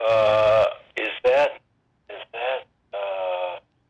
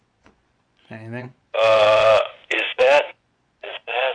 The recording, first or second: first